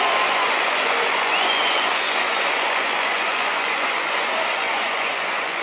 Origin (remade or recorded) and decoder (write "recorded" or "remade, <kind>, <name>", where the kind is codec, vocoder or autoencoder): remade, vocoder, Vocos